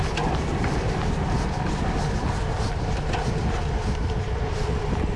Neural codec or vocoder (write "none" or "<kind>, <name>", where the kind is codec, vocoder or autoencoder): none